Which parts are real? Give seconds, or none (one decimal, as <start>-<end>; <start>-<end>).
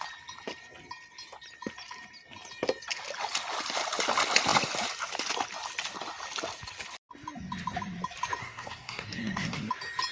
0.0-8.4; 9.7-10.1